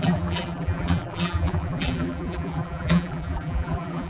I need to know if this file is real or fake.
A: fake